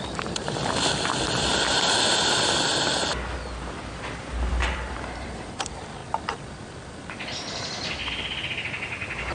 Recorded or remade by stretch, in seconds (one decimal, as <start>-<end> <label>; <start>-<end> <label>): 0.0-2.7 remade; 2.7-4.5 recorded; 4.5-6.0 remade; 6.0-7.1 recorded; 7.1-8.0 remade; 8.0-9.3 recorded